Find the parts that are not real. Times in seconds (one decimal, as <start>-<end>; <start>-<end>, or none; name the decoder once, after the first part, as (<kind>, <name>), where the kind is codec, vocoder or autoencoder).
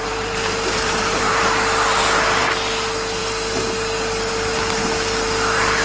0.0-1.5 (vocoder, BigVGAN v2)